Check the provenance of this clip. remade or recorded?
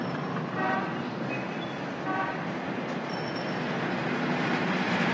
remade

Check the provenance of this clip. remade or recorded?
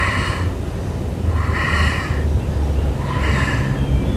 recorded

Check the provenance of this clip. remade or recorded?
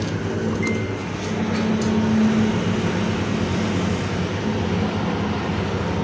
recorded